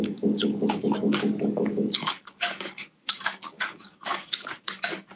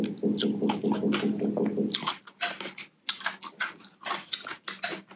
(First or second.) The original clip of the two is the second